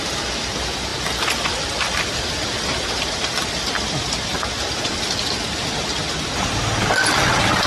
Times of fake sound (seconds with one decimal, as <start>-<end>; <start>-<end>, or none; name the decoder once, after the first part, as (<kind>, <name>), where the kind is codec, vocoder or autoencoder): none